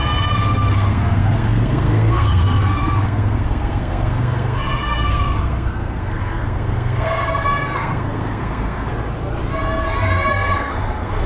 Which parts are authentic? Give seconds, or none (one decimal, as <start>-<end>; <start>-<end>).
8.9-10.3